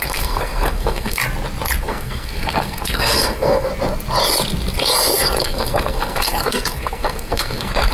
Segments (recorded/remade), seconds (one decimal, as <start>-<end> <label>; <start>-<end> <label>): 0.0-1.2 remade; 1.2-1.8 recorded; 1.8-3.7 remade; 3.7-5.4 recorded; 5.4-7.9 remade